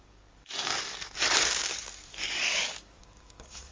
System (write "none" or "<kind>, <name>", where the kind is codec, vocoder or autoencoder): codec, DAC